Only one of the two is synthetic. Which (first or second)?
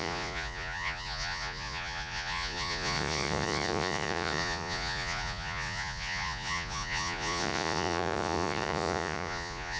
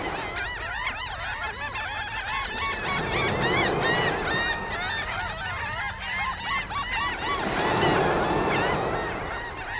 first